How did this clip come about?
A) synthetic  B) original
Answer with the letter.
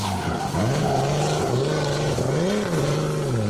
B